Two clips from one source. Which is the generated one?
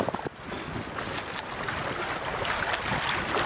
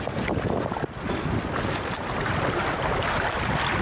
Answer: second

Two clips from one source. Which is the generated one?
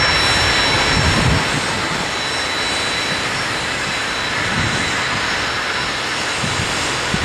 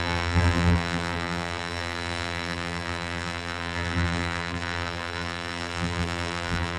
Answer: second